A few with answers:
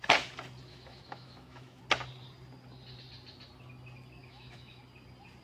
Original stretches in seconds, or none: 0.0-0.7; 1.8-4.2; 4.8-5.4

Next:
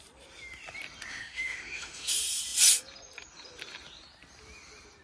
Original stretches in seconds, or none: 0.0-1.1; 2.1-5.0

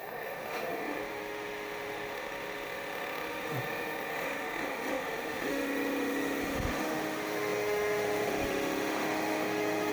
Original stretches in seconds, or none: none

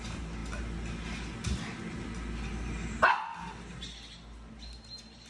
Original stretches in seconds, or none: 0.0-5.3

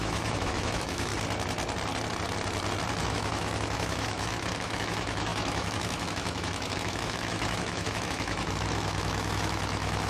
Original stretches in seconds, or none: 1.1-3.0

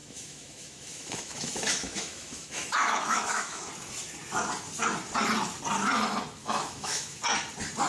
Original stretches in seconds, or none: 3.7-6.4; 7.2-7.9

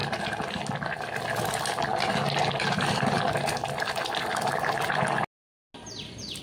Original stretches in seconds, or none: 0.0-6.4